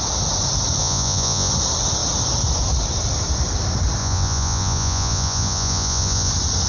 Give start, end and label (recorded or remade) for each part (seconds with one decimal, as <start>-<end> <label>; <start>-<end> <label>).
0.0-0.8 recorded; 0.8-1.5 remade; 1.5-4.0 recorded; 4.0-6.3 remade; 6.3-6.7 recorded